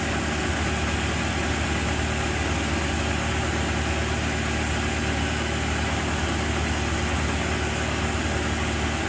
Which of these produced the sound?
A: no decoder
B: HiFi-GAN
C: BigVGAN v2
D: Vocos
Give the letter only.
A